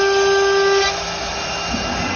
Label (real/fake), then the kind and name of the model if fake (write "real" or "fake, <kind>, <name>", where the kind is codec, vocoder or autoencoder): real